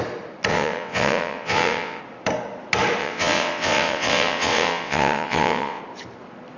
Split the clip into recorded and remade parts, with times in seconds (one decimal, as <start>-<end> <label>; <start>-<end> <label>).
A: 0.0-0.5 recorded; 0.5-2.0 remade; 2.0-3.0 recorded; 3.0-5.8 remade; 5.8-6.6 recorded